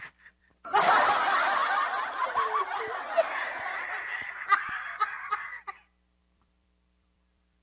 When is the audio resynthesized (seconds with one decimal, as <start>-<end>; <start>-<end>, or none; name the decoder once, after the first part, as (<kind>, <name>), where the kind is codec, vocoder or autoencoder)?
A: 0.0-1.6 (vocoder, BigVGAN v2); 6.2-7.6